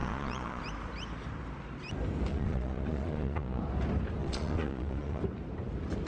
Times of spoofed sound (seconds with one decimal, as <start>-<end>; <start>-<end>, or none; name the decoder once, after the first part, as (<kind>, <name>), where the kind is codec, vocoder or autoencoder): 0.0-0.6 (vocoder, Vocos); 2.3-3.6; 4.2-5.2